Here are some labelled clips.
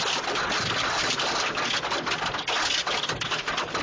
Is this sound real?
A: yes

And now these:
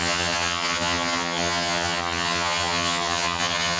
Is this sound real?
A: no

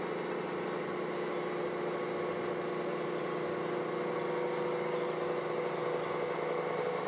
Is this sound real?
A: yes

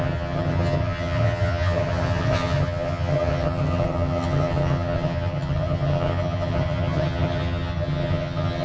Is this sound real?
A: no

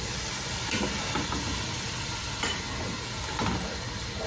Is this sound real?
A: yes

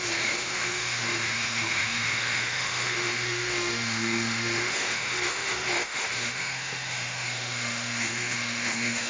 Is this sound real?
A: no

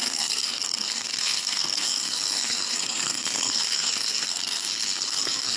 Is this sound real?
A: no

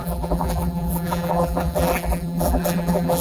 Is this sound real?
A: no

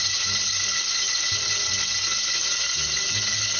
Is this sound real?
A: yes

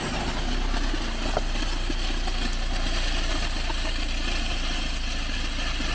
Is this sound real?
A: yes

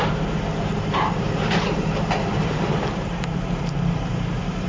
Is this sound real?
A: no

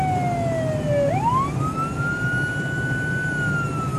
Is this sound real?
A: yes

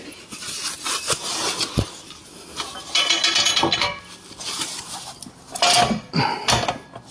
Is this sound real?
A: yes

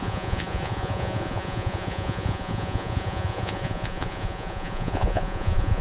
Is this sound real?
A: no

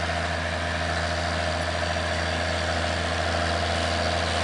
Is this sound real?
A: yes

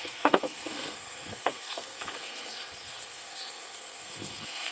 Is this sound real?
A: no